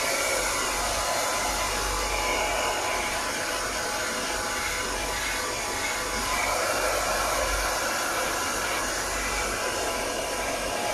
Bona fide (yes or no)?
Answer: yes